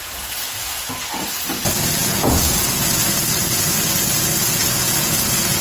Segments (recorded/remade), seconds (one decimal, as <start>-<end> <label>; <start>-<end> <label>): 0.0-0.9 remade; 0.9-2.0 recorded; 2.0-3.2 remade; 3.2-4.6 recorded; 4.6-5.6 remade